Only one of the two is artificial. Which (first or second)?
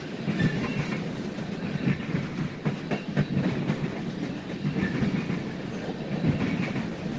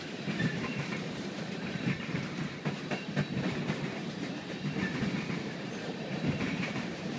second